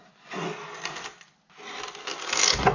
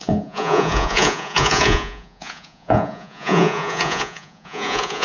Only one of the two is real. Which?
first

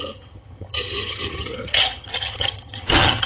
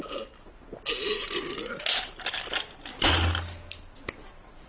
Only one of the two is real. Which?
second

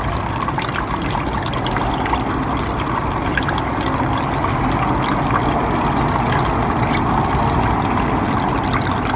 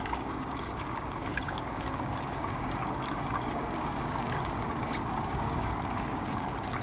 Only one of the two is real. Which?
first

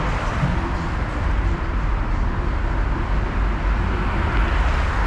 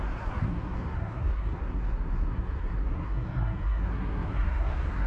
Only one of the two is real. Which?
first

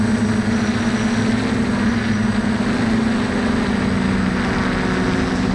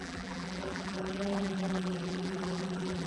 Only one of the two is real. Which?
first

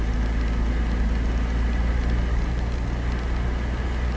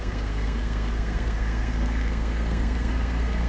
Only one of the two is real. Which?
first